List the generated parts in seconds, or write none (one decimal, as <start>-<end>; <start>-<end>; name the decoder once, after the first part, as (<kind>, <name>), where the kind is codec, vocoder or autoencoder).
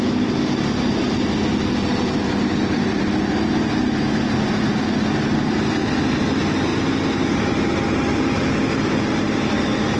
none